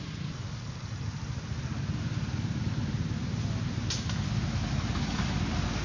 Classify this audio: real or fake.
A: real